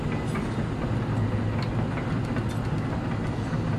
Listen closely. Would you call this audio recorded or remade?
recorded